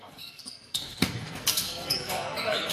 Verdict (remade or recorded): remade